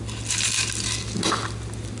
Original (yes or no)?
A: yes